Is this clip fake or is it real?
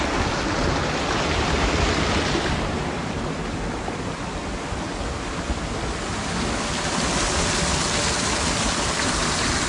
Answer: real